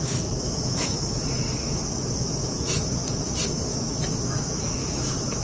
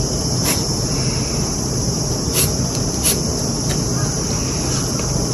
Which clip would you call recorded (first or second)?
second